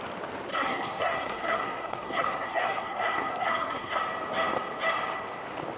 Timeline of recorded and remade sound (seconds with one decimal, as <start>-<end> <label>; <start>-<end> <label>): 0.0-0.5 recorded; 0.5-4.0 remade; 4.0-5.8 recorded